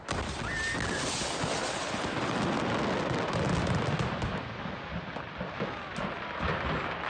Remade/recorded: recorded